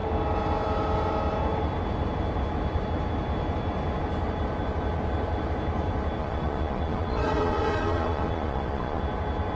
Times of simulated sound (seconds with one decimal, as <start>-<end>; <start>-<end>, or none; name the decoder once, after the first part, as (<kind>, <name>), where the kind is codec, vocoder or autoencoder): 6.2-9.0 (vocoder, Vocos)